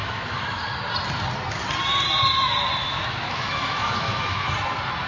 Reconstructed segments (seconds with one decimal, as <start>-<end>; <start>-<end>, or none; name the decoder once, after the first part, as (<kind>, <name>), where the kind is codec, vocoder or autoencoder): 0.0-0.8 (autoencoder, DAC-VAE); 2.8-4.5